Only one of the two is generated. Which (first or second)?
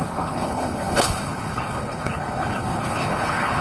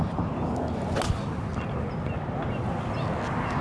first